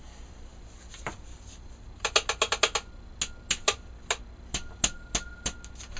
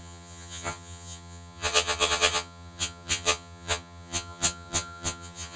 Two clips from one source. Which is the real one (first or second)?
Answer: first